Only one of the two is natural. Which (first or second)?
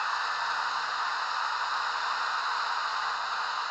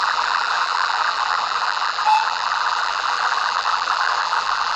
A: first